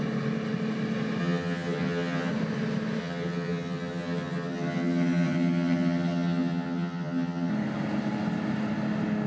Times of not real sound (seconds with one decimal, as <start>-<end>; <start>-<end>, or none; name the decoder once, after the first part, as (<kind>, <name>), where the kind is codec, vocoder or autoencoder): 1.2-2.3 (vocoder, HiFi-GAN); 3.0-7.5